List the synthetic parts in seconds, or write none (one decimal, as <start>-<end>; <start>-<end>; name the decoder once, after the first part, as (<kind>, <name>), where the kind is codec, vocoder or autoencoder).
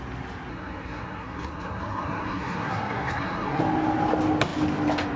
0.5-3.6 (codec, SNAC)